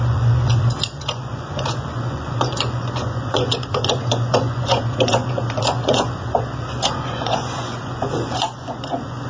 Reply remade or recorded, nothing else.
remade